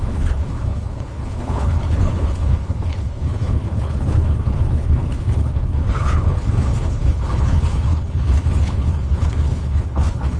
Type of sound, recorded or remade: remade